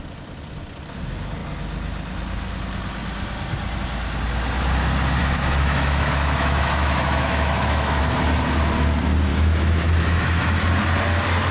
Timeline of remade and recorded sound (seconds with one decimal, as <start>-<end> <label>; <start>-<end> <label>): 0.0-5.2 recorded; 5.2-8.0 remade; 8.0-9.3 recorded; 9.3-10.6 remade; 10.6-11.5 recorded